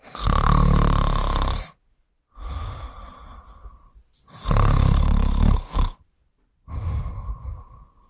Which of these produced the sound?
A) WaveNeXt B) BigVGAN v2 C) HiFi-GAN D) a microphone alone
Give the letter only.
D